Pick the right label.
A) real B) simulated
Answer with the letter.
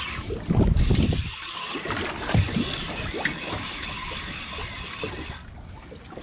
A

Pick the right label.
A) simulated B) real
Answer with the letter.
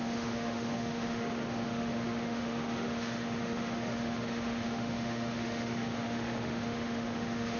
A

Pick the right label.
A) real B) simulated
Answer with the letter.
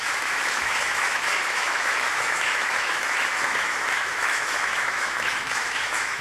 B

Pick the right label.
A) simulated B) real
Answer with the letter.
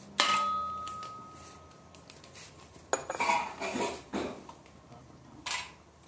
B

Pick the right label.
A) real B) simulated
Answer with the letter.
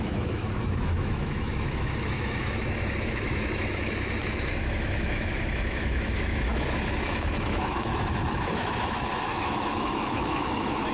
B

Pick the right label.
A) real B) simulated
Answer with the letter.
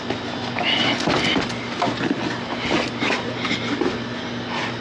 A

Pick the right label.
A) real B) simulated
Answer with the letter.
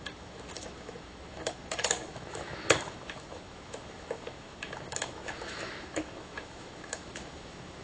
B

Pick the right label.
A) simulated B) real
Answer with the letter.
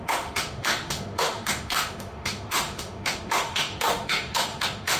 A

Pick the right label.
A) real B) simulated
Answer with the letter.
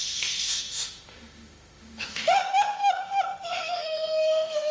B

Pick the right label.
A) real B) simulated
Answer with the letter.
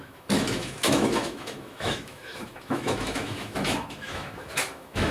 B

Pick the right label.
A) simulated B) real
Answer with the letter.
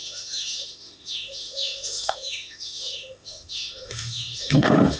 A